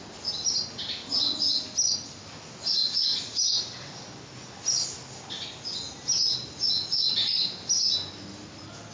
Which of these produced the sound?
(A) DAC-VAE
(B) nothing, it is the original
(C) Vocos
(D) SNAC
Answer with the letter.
B